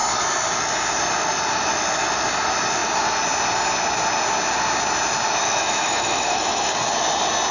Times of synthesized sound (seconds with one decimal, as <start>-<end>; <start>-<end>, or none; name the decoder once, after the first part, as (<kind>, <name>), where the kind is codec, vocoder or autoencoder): 5.4-6.7 (autoencoder, DAC-VAE)